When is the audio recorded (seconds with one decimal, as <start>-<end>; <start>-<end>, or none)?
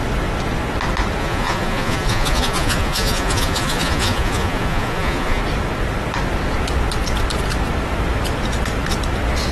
0.0-1.2; 5.4-9.5